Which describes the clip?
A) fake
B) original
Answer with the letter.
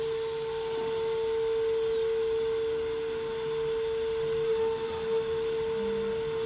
B